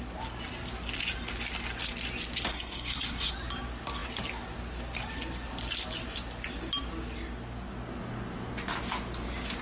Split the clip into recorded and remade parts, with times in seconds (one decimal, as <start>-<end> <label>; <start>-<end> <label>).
0.0-2.5 recorded; 2.5-3.3 remade; 3.3-9.6 recorded